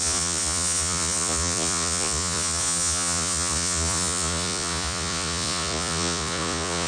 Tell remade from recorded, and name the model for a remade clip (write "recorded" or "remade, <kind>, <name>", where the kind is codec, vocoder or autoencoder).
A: remade, vocoder, Vocos